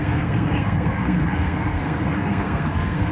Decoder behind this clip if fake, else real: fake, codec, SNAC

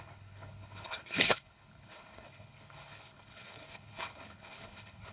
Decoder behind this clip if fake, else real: fake, codec, HILCodec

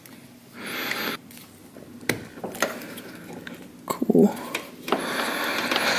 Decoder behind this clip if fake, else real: real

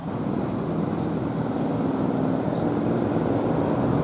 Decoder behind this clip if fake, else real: real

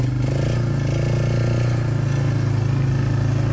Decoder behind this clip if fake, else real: real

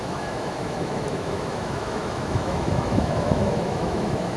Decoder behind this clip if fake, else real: fake, autoencoder, DAC-VAE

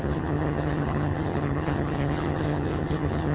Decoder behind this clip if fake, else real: fake, vocoder, HiFi-GAN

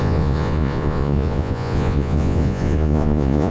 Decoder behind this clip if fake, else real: fake, vocoder, Vocos